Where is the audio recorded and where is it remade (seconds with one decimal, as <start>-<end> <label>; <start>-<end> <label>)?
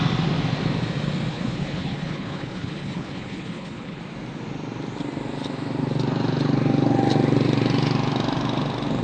0.0-1.3 recorded; 1.3-4.0 remade; 4.0-9.0 recorded